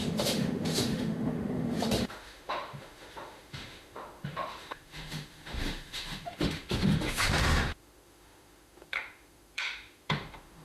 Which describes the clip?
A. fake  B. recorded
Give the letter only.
A